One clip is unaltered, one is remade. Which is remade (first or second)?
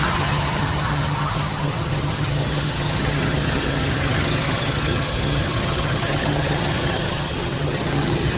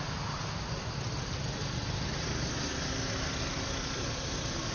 first